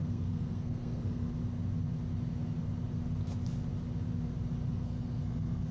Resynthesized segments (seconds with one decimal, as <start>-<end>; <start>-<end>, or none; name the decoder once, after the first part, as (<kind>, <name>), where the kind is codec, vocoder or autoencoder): 0.0-1.3 (codec, SNAC); 4.7-5.7